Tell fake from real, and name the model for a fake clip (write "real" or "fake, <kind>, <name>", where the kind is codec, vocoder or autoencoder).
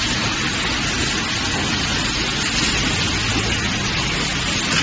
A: real